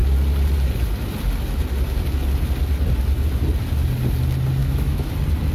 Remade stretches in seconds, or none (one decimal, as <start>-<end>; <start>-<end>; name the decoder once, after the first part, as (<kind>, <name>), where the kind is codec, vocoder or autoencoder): 4.6-5.1 (autoencoder, DAC-VAE)